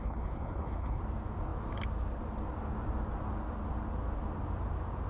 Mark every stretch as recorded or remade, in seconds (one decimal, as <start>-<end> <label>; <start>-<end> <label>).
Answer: 0.0-1.0 remade; 1.0-5.1 recorded